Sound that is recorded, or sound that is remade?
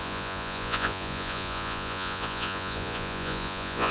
remade